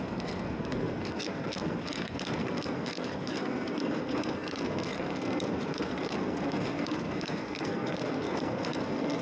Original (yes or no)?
no